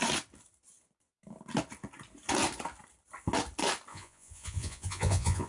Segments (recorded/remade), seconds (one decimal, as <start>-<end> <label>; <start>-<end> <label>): 0.0-3.9 recorded; 3.9-5.5 remade